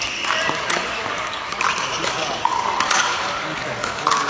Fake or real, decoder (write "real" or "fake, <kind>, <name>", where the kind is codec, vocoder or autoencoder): fake, codec, DAC